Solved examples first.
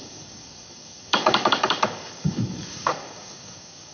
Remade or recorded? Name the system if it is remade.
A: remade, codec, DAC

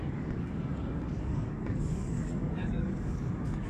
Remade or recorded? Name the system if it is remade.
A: remade, codec, DAC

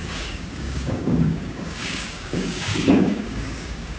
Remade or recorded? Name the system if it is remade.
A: remade, codec, DAC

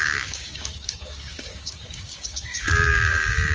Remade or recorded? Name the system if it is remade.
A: remade, codec, DAC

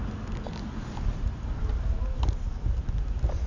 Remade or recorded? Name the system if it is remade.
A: recorded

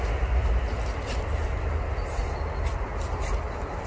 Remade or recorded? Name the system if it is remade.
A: recorded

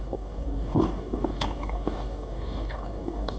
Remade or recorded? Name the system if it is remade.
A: remade, codec, DAC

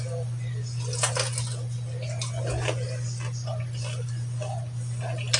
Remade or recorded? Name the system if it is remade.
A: recorded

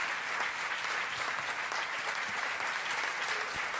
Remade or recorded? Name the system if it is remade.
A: recorded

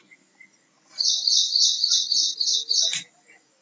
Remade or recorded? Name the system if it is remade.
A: recorded